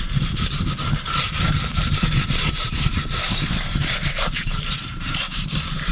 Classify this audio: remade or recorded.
remade